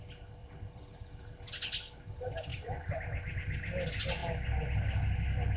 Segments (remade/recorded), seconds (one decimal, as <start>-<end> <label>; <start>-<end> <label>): 0.0-0.4 recorded; 0.4-1.5 remade; 1.5-2.5 recorded; 2.5-3.0 remade; 3.0-5.6 recorded